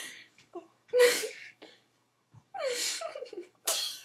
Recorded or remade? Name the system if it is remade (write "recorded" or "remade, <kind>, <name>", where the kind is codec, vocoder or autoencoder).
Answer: remade, codec, DAC